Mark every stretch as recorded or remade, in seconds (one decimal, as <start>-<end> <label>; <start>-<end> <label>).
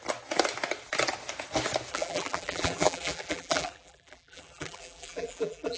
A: 0.0-1.9 recorded; 1.9-5.8 remade